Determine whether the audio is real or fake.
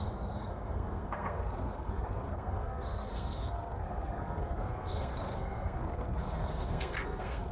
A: fake